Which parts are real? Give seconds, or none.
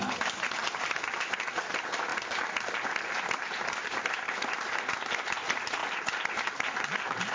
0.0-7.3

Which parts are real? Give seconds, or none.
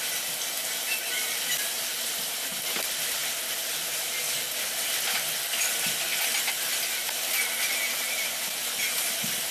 0.0-9.5